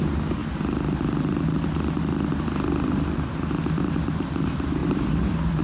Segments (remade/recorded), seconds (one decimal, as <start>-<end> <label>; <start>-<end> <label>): 0.0-0.4 remade; 0.4-3.8 recorded; 3.8-5.6 remade